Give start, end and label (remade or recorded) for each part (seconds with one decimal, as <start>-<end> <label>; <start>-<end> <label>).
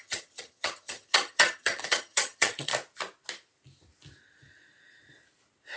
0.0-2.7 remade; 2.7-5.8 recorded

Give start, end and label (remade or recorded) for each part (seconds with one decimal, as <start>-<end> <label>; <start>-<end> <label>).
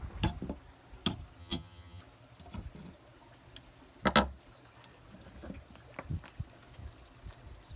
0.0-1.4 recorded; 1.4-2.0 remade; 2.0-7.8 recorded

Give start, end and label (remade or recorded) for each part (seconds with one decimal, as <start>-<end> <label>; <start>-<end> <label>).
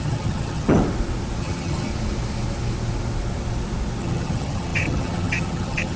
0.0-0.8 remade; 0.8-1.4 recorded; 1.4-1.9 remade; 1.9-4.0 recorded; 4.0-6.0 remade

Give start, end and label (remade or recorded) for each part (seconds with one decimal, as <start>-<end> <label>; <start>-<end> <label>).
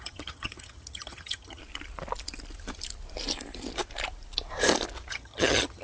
0.0-1.6 remade; 1.6-5.1 recorded; 5.1-5.8 remade